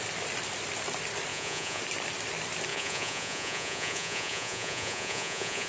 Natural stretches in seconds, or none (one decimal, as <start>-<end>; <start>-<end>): 0.0-1.3; 1.8-2.7